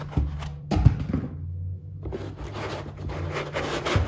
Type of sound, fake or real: real